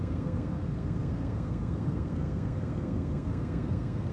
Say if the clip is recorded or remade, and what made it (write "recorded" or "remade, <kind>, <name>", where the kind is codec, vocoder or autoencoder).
remade, codec, SNAC